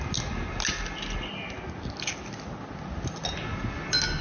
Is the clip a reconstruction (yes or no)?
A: no